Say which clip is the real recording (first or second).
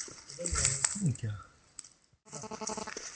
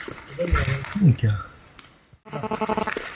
second